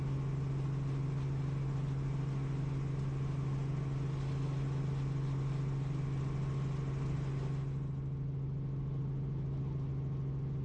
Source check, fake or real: real